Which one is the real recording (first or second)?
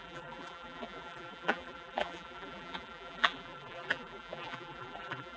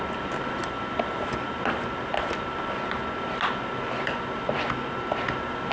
second